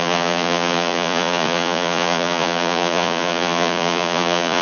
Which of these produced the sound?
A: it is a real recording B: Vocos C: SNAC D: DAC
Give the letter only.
B